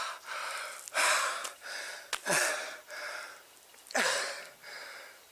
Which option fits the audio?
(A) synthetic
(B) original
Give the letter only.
B